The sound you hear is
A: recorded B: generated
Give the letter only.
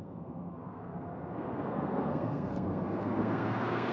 B